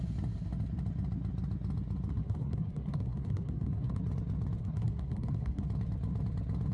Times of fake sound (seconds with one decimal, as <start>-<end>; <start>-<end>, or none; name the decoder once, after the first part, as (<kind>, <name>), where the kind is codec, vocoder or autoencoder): 2.1-4.0 (codec, SNAC); 4.6-5.6